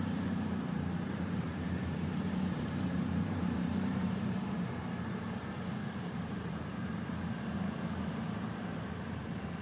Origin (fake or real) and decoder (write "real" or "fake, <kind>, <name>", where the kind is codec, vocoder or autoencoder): fake, vocoder, BigVGAN v2